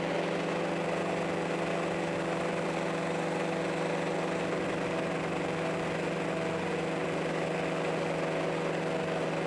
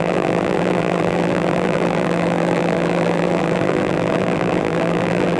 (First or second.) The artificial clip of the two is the second